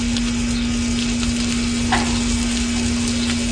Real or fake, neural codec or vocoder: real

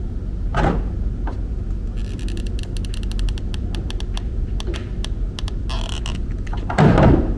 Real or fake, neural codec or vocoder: real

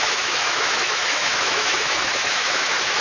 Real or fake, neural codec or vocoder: fake, autoencoder, DAC-VAE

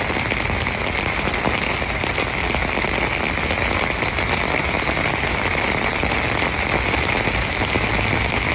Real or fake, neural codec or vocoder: real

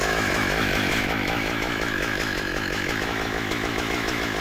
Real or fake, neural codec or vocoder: fake, autoencoder, DAC-VAE